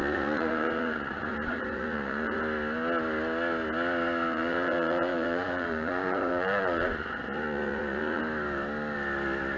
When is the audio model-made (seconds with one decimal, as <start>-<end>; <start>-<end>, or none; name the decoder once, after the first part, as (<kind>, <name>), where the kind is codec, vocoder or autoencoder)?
0.0-2.4 (vocoder, Vocos); 4.3-8.2